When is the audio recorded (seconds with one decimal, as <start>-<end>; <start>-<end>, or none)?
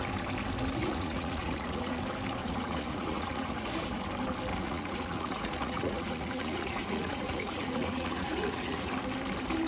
0.0-0.8; 2.0-2.4; 3.7-4.5; 8.9-9.7